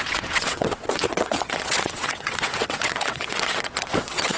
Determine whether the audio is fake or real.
fake